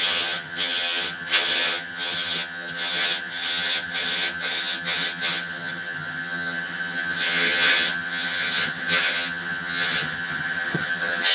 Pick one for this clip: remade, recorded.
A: remade